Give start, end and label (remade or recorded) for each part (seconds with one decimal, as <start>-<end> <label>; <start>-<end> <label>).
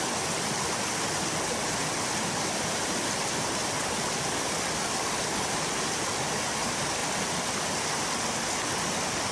0.0-1.8 recorded; 1.8-5.4 remade; 5.4-9.3 recorded